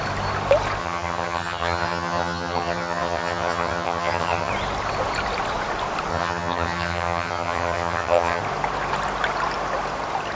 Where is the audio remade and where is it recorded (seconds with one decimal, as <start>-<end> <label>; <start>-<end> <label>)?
0.0-0.8 recorded; 0.8-4.5 remade; 4.5-6.1 recorded; 6.1-8.4 remade; 8.4-10.3 recorded